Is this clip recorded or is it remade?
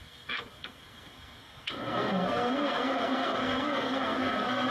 remade